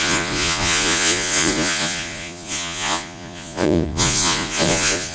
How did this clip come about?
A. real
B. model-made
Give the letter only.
B